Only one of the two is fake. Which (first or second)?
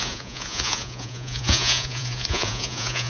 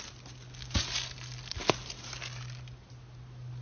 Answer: first